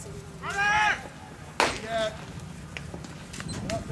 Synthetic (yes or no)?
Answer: no